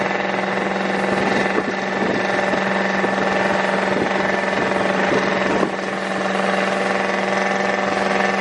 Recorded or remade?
recorded